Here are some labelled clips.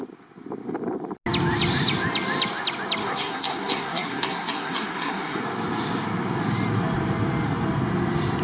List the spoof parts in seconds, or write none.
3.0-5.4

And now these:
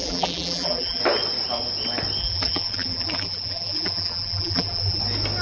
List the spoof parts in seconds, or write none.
0.0-1.0; 2.2-5.0